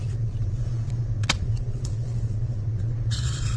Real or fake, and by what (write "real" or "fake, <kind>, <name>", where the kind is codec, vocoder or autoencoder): fake, vocoder, Vocos